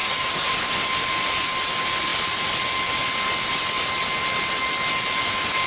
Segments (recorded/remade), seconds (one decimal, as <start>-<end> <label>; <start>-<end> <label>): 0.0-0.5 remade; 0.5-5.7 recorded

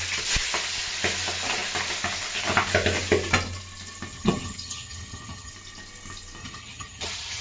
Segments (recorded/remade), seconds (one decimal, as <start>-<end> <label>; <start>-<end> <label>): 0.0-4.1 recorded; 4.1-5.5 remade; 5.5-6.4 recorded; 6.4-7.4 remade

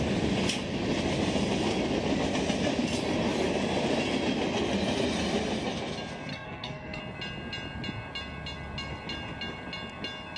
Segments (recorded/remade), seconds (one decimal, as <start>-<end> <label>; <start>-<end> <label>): 0.0-6.3 recorded; 6.3-7.0 remade; 7.0-10.4 recorded

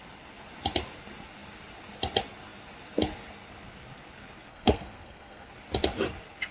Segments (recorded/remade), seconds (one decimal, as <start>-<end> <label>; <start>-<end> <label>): 0.0-4.5 recorded; 4.5-5.5 remade; 5.5-6.5 recorded